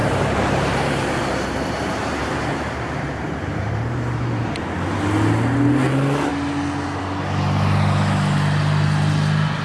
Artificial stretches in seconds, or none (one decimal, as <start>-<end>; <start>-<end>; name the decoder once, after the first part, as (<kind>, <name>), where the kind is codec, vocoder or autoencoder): 0.0-4.5 (vocoder, BigVGAN v2)